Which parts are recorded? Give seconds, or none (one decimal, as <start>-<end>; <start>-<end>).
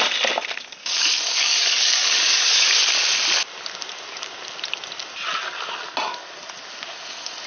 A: 0.0-0.8; 2.7-7.5